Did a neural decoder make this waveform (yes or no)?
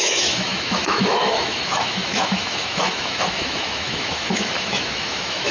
yes